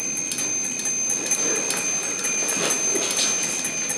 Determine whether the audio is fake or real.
real